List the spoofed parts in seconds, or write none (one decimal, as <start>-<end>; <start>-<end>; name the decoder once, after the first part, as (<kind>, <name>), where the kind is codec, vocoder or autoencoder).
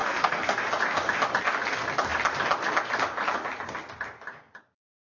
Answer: 0.0-0.6 (codec, SNAC)